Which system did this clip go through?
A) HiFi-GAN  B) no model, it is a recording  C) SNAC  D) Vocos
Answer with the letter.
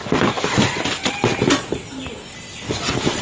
B